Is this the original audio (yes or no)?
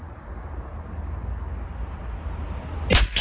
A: yes